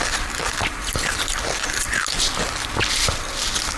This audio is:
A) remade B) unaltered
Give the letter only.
B